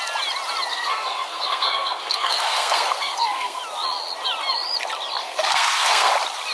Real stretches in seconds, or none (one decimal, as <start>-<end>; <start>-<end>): 0.0-0.7; 3.6-5.2; 6.1-6.5